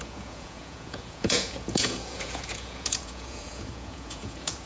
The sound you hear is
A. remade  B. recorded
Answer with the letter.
A